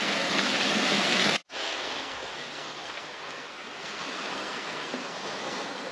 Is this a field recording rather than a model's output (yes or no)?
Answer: no